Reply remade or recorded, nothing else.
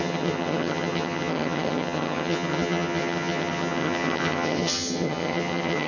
remade